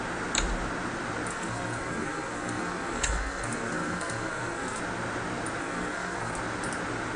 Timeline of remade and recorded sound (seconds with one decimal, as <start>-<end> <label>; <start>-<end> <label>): 0.0-1.3 recorded; 1.3-4.8 remade; 4.8-5.6 recorded; 5.6-6.4 remade; 6.4-7.2 recorded

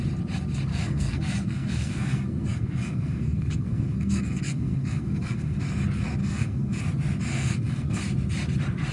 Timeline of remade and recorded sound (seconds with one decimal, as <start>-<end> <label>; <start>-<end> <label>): 0.0-0.7 recorded; 0.7-5.6 remade; 5.6-6.2 recorded; 6.2-6.8 remade; 6.8-7.3 recorded; 7.3-8.0 remade; 8.0-8.9 recorded

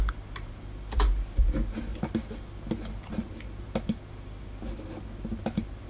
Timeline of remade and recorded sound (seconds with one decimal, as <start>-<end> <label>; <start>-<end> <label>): 0.0-5.9 recorded

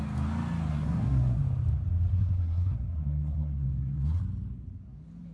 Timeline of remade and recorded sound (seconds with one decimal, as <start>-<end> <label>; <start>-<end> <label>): 0.0-0.7 recorded; 0.7-1.4 remade; 1.4-2.1 recorded; 2.1-4.2 remade; 4.2-5.3 recorded

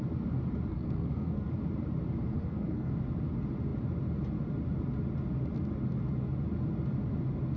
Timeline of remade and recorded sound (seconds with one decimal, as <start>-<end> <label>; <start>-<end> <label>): 0.0-0.7 recorded; 0.7-1.5 remade; 1.5-2.4 recorded; 2.4-2.9 remade; 2.9-7.6 recorded

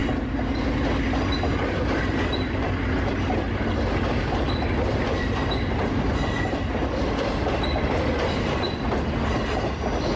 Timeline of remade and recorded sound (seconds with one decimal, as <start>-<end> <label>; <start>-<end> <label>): 0.0-10.2 recorded

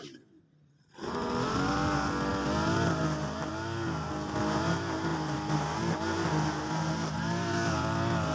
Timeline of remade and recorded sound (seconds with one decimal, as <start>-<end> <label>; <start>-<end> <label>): 0.0-8.3 recorded